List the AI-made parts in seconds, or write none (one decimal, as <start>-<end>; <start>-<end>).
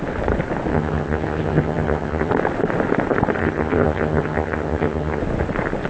0.7-2.3; 3.4-5.2